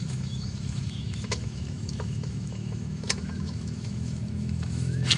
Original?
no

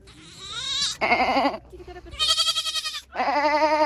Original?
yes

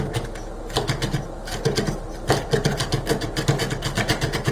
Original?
yes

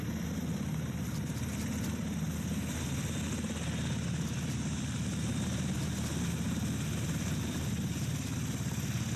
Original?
yes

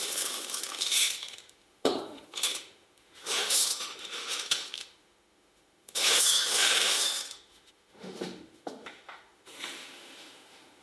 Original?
no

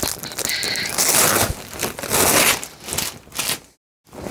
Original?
yes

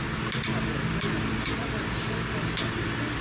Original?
yes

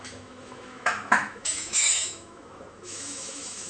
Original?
no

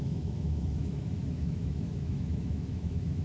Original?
no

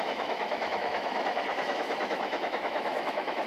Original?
no